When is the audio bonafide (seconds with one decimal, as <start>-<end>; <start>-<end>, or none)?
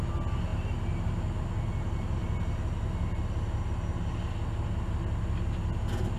0.0-6.2